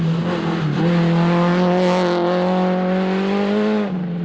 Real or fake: real